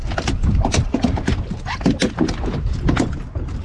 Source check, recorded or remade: recorded